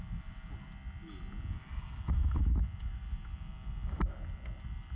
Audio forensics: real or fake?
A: real